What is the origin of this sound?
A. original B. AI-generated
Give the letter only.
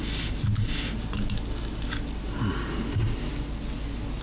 A